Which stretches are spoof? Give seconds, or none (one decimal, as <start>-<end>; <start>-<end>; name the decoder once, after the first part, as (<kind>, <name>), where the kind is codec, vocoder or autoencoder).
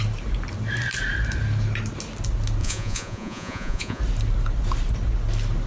2.6-4.0 (vocoder, Vocos)